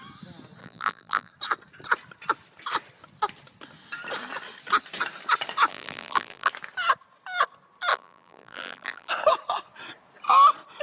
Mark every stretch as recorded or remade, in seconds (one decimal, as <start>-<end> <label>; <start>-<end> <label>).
0.0-0.6 recorded; 0.6-1.3 remade; 1.3-5.7 recorded; 5.7-6.5 remade; 6.5-7.9 recorded; 7.9-9.1 remade; 9.1-10.8 recorded